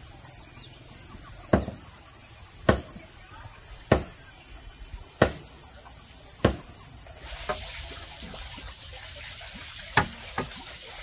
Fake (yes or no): no